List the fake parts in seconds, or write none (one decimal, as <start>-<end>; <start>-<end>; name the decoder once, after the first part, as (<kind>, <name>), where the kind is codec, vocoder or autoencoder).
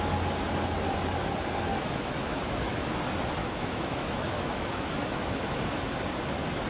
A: 1.7-3.0 (autoencoder, DAC-VAE); 3.4-5.6